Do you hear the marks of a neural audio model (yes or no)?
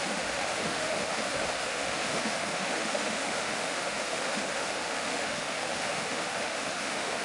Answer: yes